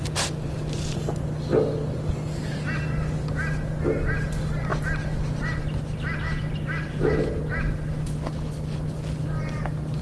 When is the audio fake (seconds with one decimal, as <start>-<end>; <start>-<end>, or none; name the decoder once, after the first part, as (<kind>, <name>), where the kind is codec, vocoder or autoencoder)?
none